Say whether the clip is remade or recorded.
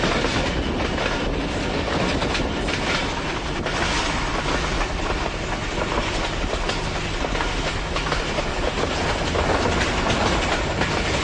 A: recorded